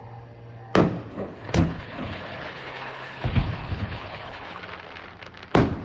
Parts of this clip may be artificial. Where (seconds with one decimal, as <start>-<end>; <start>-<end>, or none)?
1.1-4.6